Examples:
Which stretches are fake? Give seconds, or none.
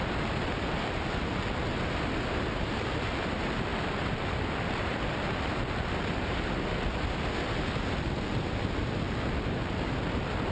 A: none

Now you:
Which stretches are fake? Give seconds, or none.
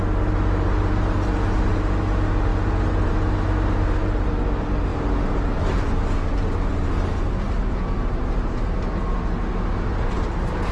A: none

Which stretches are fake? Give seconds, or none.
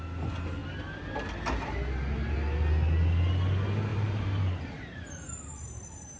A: 3.9-6.2 (vocoder, BigVGAN v2)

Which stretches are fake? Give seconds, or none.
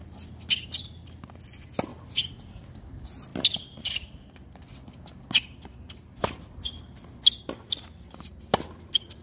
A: 1.9-2.5 (vocoder, BigVGAN v2)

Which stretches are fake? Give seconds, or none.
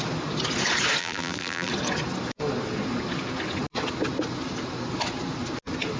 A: 1.0-1.7 (vocoder, BigVGAN v2)